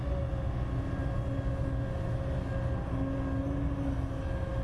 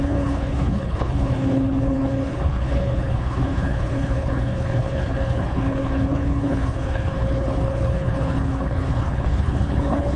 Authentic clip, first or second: first